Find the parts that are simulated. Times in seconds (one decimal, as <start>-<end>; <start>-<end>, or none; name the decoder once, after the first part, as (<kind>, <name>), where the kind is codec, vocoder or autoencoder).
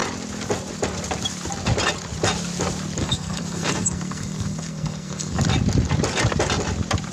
3.0-5.4 (codec, SNAC)